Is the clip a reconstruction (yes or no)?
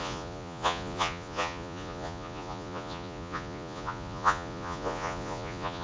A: yes